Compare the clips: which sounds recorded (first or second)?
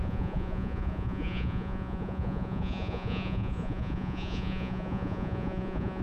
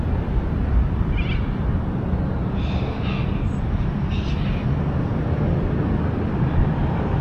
second